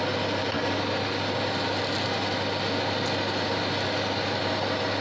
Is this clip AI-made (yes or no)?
no